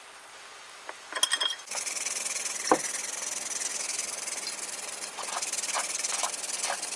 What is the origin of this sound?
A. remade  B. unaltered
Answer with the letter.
B